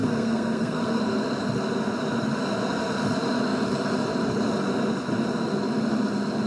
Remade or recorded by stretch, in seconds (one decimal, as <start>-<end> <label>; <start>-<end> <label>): 0.0-1.0 remade; 1.0-6.5 recorded